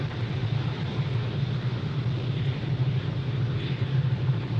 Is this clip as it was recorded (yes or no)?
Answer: yes